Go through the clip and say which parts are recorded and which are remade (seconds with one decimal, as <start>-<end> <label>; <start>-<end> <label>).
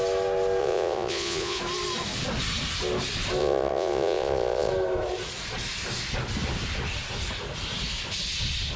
0.0-0.6 recorded; 0.6-1.6 remade; 1.6-3.4 recorded; 3.4-4.7 remade; 4.7-8.8 recorded